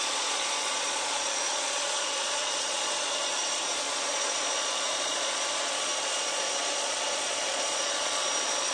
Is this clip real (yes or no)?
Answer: no